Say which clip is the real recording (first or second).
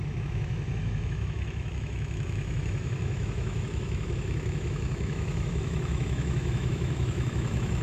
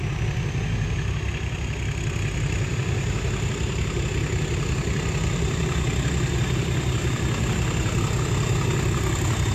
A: second